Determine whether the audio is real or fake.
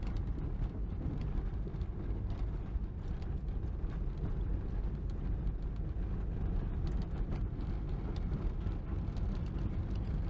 real